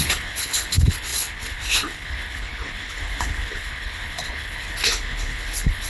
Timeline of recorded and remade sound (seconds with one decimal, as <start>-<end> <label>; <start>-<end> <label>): 0.0-5.9 remade